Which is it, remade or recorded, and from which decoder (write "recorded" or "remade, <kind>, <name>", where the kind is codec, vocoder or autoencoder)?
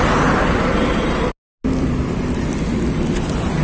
recorded